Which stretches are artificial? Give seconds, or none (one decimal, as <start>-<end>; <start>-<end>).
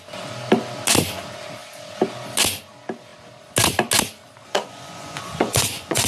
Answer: 4.4-6.1